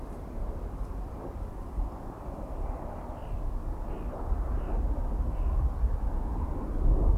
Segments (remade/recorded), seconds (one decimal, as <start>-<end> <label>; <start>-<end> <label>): 0.0-7.2 recorded

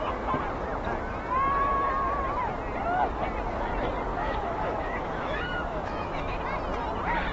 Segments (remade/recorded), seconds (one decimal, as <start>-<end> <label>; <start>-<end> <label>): 0.0-4.1 recorded; 4.1-6.4 remade; 6.4-7.3 recorded

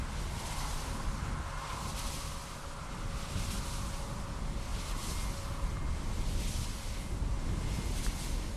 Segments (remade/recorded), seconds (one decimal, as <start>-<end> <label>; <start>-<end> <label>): 0.0-8.6 recorded

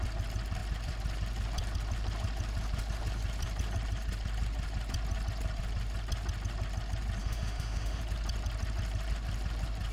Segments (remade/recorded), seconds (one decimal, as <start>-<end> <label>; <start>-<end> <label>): 0.0-7.2 recorded; 7.2-8.0 remade; 8.0-9.9 recorded

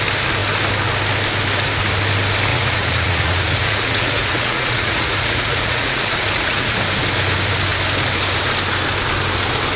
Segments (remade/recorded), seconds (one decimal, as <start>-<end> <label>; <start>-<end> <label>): 0.0-2.5 recorded; 2.5-6.8 remade; 6.8-9.8 recorded